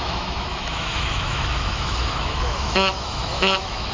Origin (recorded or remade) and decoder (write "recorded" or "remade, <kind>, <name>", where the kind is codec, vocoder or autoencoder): remade, autoencoder, DAC-VAE